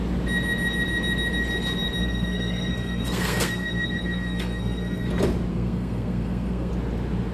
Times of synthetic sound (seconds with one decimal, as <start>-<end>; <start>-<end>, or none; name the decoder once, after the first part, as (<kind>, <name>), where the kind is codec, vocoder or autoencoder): 2.0-5.1 (codec, SNAC); 5.5-6.7